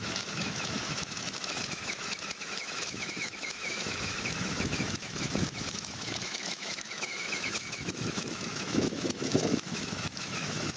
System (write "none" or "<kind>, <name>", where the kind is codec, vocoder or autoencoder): autoencoder, DAC-VAE